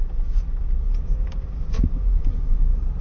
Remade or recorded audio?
recorded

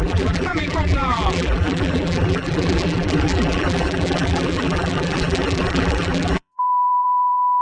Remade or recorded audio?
remade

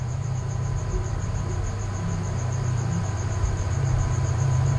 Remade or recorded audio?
remade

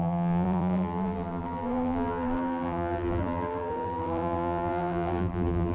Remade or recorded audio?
remade